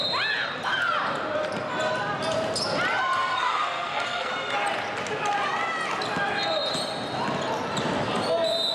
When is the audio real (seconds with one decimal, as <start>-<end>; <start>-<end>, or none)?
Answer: 0.0-3.2; 4.3-8.7